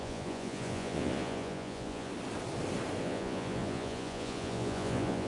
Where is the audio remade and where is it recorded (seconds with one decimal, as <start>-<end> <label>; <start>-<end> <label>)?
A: 0.0-2.1 remade; 2.1-3.0 recorded; 3.0-5.3 remade